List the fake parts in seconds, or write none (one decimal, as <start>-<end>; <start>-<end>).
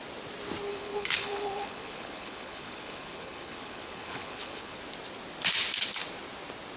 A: 0.7-4.8